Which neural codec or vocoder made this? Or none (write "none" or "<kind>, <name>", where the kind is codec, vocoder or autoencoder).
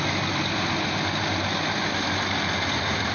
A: none